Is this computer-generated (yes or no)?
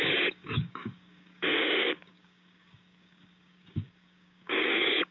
yes